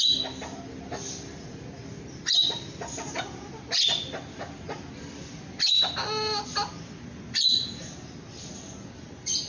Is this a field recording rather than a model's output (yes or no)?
yes